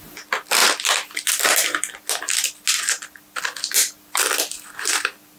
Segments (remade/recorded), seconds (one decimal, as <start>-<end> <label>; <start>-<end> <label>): 0.0-5.4 recorded